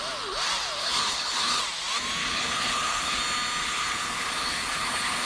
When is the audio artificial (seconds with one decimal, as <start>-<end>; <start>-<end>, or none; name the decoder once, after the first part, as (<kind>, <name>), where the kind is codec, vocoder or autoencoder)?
0.8-1.6 (codec, HILCodec); 2.2-3.2; 3.6-5.3